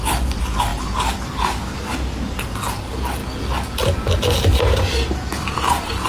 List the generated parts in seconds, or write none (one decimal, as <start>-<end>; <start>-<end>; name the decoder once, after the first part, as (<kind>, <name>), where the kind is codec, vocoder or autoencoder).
none